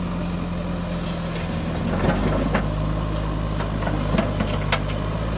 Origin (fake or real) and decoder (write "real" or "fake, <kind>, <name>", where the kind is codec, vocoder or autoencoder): real